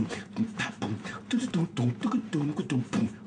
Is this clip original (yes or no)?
no